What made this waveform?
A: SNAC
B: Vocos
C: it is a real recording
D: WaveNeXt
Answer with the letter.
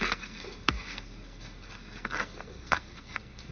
A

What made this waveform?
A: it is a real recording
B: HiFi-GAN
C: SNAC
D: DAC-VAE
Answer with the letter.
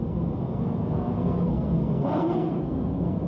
C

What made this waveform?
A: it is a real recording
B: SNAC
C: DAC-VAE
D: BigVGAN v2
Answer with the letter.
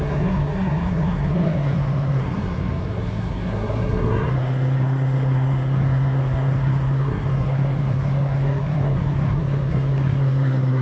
B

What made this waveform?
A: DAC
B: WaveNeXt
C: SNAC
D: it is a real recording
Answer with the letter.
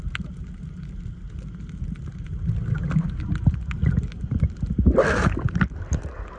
D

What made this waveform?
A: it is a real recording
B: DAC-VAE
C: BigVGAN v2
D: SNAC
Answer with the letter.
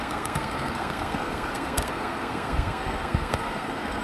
D